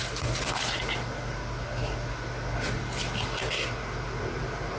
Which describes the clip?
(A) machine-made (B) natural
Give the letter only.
B